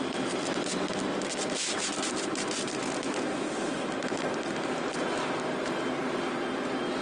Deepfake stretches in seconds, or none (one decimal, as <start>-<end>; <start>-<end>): none